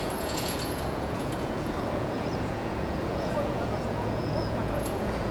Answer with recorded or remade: remade